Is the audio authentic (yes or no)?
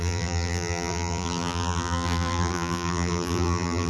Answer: no